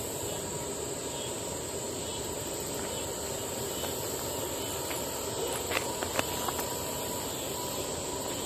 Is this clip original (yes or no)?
no